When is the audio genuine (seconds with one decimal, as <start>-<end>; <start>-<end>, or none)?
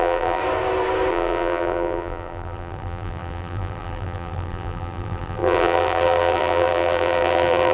0.4-1.1